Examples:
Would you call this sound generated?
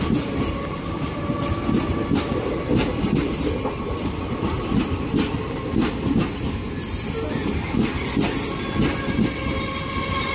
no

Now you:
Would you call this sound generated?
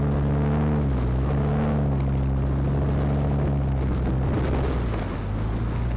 no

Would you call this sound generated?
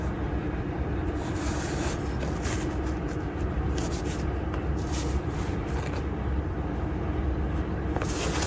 no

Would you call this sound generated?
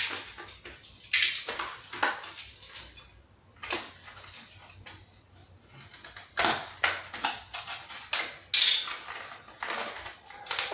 no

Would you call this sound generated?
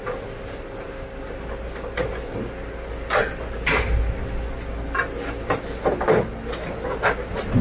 no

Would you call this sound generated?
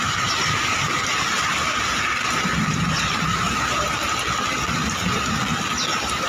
no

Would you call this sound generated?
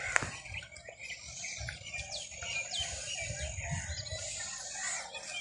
no